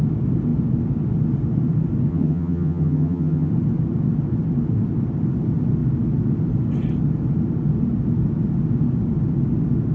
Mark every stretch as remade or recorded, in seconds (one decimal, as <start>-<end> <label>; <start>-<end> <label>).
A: 0.0-2.1 recorded; 2.1-3.5 remade; 3.5-9.9 recorded